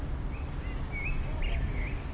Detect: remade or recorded recorded